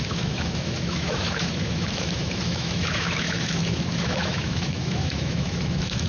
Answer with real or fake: fake